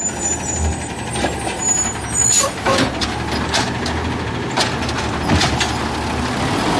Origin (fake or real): real